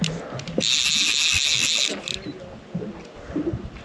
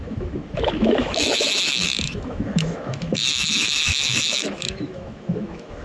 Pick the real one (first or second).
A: first